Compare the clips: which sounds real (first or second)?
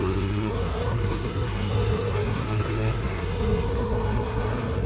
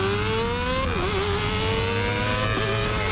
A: second